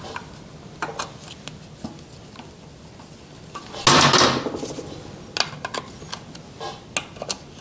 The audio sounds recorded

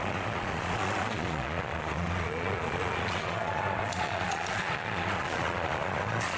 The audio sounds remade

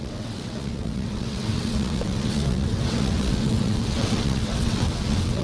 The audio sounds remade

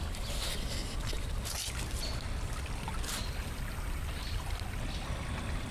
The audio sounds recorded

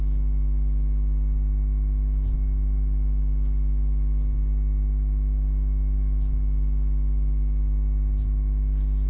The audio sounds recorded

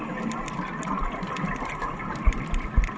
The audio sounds recorded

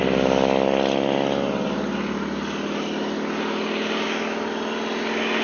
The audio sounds recorded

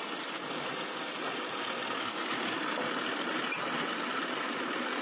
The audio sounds recorded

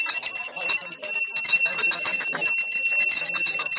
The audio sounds recorded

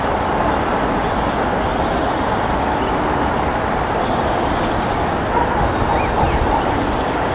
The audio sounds recorded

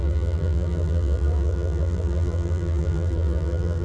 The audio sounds remade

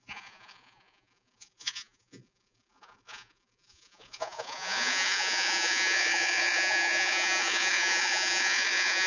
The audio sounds remade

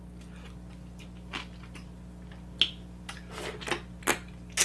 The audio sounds recorded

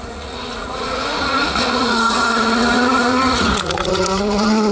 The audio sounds remade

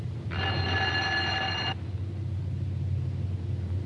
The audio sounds recorded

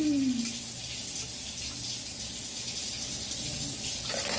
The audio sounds recorded